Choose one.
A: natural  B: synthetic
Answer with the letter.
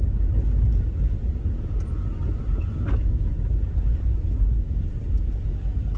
A